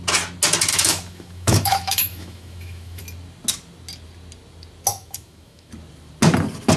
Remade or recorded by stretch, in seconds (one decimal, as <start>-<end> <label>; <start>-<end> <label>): 0.0-0.7 recorded; 0.7-3.0 remade; 3.0-4.9 recorded; 4.9-5.7 remade; 5.7-6.8 recorded